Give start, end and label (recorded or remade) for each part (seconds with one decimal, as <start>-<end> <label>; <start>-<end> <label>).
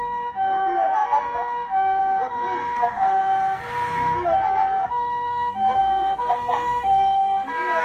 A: 0.0-7.8 remade